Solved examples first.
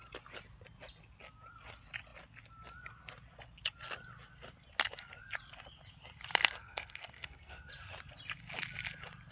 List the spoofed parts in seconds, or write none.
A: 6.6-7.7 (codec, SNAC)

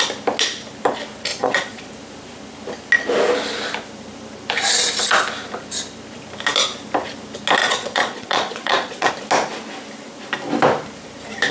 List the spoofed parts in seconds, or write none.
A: 1.3-1.9 (vocoder, Vocos); 7.6-9.1

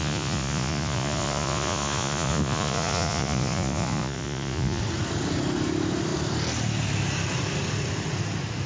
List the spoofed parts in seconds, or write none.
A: 0.0-4.8 (vocoder, Vocos)

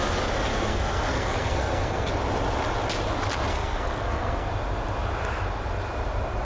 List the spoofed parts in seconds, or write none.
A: 0.5-2.1 (codec, SNAC); 3.5-4.5

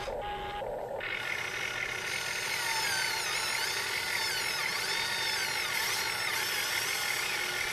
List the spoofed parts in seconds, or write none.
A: none

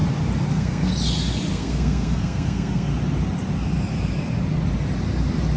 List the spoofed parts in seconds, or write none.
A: 0.5-0.9 (codec, SNAC); 1.5-2.9

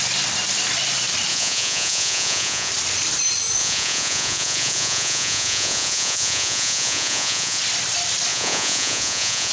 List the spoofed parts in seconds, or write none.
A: 1.3-2.7 (vocoder, Vocos); 3.6-7.6; 8.3-9.5